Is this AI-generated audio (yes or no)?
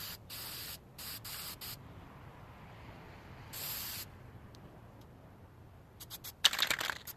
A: no